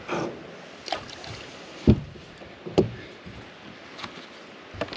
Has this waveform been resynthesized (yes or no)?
no